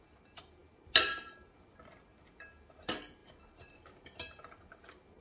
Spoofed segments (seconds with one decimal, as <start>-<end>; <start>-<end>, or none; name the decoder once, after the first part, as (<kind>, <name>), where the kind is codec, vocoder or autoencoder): none